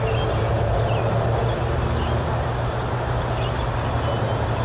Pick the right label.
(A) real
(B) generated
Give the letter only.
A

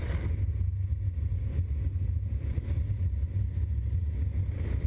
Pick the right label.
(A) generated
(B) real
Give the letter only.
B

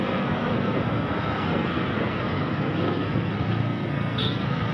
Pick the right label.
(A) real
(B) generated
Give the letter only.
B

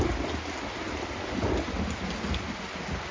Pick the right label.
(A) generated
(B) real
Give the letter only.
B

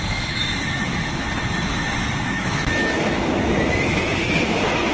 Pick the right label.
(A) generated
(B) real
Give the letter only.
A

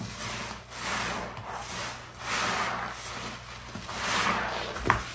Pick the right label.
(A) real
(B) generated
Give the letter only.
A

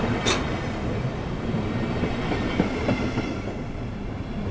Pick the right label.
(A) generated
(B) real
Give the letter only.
B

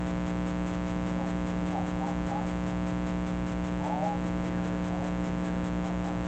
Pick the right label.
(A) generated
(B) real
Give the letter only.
B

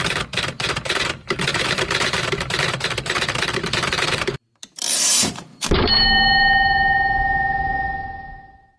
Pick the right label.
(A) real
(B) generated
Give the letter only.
B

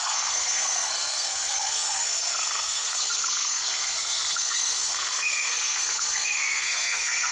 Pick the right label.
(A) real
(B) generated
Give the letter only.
B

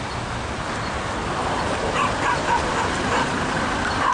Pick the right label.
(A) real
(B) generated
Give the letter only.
A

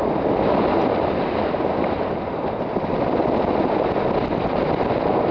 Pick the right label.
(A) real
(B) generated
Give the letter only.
A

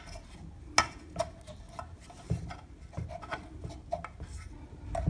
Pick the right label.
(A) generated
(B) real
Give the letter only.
B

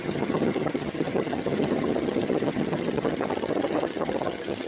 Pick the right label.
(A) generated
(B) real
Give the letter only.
A